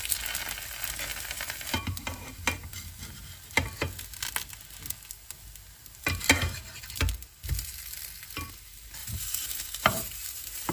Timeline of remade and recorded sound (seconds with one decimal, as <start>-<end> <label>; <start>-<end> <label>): 0.0-1.1 recorded; 1.1-2.0 remade; 2.0-9.0 recorded; 9.0-10.7 remade